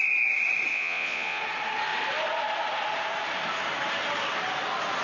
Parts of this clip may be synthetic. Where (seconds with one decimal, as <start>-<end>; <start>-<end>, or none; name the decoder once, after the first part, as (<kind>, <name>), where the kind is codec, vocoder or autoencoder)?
0.7-1.4 (vocoder, Vocos)